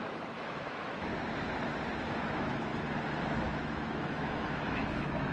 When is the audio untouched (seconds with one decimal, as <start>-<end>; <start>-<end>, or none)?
1.1-2.0; 2.7-3.4